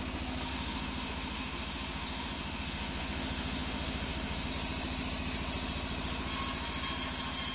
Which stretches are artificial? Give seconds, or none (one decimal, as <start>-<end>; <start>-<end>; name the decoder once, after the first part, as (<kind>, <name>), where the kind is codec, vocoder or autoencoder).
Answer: 0.5-4.5 (autoencoder, DAC-VAE)

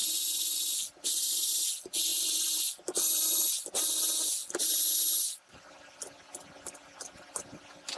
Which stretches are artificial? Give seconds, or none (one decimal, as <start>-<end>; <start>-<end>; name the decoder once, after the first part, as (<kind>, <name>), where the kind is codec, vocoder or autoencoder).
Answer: none

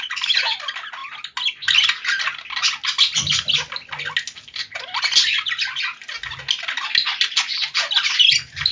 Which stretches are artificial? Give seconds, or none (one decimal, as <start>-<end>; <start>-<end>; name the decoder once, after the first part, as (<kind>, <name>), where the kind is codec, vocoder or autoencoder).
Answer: none

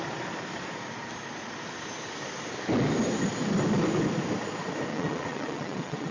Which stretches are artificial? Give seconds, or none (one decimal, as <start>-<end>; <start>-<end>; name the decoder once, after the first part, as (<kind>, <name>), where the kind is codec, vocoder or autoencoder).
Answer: 4.9-6.1 (vocoder, WaveNeXt)

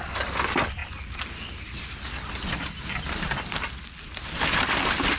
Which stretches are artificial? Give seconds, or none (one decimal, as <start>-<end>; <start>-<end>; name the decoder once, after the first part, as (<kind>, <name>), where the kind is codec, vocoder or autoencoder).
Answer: none